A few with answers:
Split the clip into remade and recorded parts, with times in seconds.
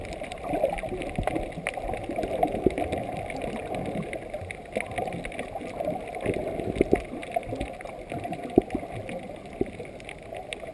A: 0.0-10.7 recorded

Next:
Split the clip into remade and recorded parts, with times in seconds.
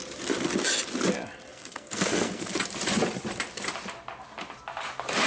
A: 0.0-1.5 recorded; 1.5-2.5 remade; 2.5-5.3 recorded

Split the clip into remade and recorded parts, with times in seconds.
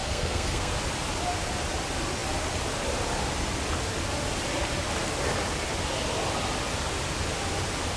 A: 0.0-0.7 remade; 0.7-8.0 recorded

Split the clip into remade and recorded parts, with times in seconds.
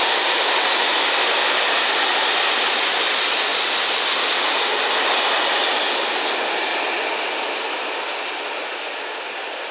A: 0.0-9.7 recorded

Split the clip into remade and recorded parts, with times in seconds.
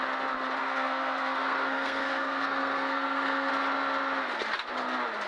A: 0.0-0.6 recorded; 0.6-3.5 remade; 3.5-5.3 recorded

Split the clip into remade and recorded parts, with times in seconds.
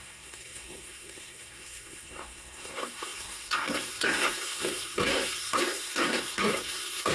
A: 0.0-7.1 remade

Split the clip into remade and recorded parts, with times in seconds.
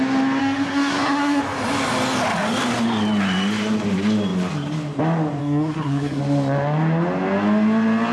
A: 0.0-0.4 recorded; 0.4-1.4 remade; 1.4-5.4 recorded; 5.4-6.2 remade; 6.2-8.1 recorded